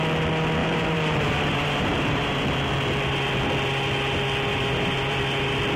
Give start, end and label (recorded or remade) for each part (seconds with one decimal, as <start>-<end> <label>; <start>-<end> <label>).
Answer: 0.0-0.6 recorded; 0.6-2.4 remade; 2.4-4.5 recorded; 4.5-5.2 remade; 5.2-5.8 recorded